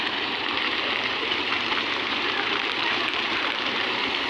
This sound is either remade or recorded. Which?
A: remade